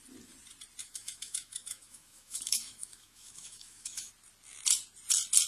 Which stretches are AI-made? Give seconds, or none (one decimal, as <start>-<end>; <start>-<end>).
0.8-4.1